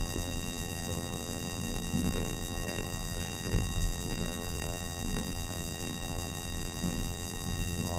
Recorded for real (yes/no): no